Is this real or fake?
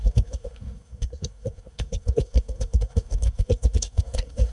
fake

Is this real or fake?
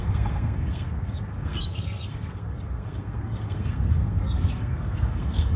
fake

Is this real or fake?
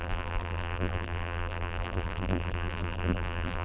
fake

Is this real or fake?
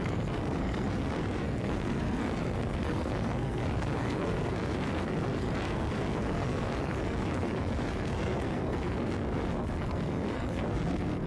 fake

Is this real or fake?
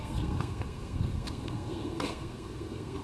fake